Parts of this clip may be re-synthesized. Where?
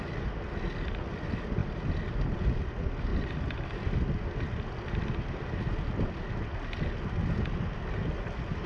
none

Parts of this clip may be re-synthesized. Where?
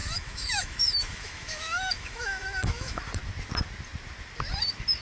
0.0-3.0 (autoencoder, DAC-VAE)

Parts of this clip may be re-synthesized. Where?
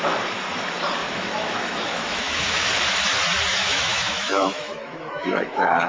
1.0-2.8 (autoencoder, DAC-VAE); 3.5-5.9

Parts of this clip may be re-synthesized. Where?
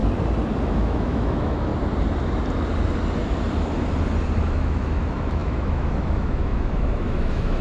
0.6-1.7 (autoencoder, DAC-VAE); 4.4-7.6